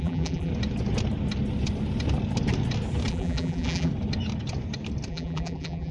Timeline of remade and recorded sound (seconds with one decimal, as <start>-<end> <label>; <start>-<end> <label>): 0.0-0.5 remade; 0.5-3.1 recorded; 3.1-3.9 remade; 3.9-5.1 recorded; 5.1-5.9 remade